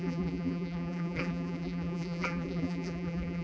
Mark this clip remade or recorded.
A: remade